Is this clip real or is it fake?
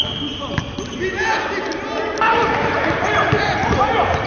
real